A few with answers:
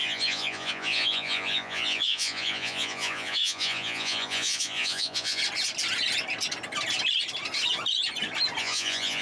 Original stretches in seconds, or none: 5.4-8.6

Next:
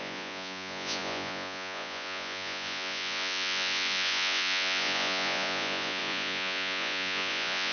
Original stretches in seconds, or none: none

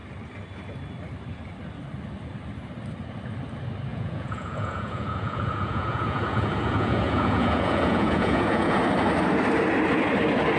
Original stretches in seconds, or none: 0.0-3.9; 8.8-10.6

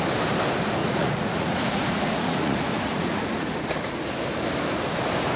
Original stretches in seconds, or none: 0.0-0.8; 4.0-5.4

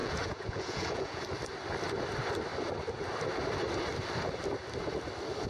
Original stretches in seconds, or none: 1.2-5.5

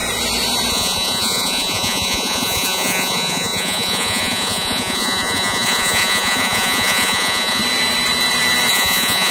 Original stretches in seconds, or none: 0.0-0.7; 7.6-8.7

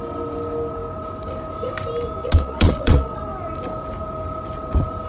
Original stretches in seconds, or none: 0.0-2.2; 3.2-5.1